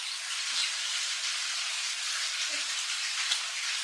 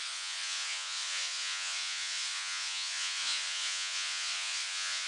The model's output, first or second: second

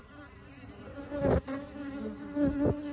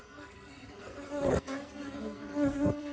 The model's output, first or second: second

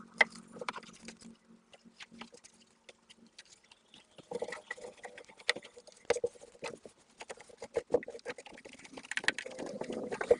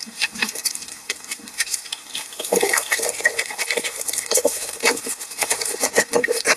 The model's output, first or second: second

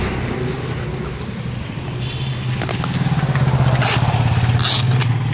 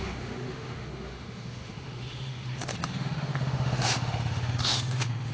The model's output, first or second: second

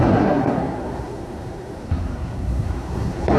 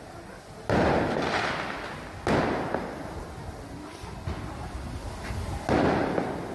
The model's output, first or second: first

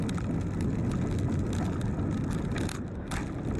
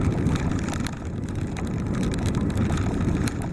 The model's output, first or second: second